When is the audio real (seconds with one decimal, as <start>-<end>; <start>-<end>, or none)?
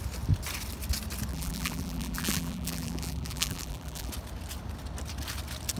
0.0-1.3; 4.1-5.8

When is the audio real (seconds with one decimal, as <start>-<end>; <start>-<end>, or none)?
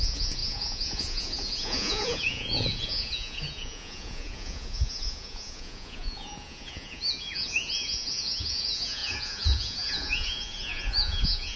none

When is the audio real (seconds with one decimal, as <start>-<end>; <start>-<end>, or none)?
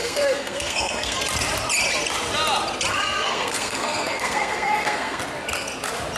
1.2-2.9; 5.2-6.2